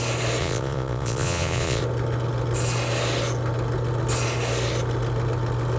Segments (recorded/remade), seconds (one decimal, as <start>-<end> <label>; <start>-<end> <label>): 0.0-0.4 recorded; 0.4-1.8 remade; 1.8-5.8 recorded